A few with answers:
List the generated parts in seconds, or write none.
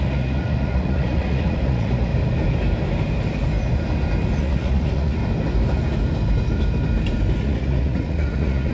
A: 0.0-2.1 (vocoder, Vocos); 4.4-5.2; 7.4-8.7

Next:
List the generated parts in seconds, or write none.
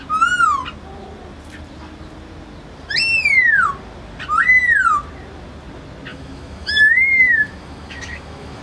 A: 6.1-8.6 (autoencoder, DAC-VAE)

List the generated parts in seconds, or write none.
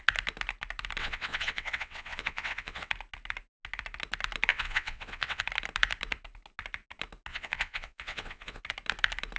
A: 1.0-2.9 (vocoder, WaveNeXt); 4.5-5.4; 7.3-8.6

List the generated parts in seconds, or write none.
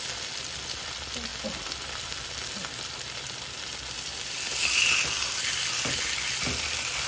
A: none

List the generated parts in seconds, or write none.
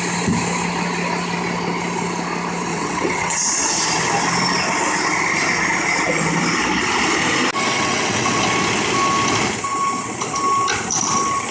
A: 2.7-3.5 (vocoder, WaveNeXt); 7.6-8.4